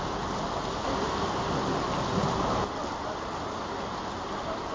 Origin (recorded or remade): recorded